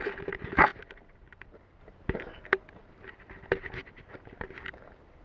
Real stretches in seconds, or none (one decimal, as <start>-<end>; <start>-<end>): 0.0-2.8; 3.3-3.8; 4.6-5.2